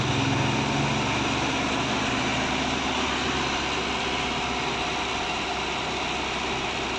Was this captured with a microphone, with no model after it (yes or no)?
yes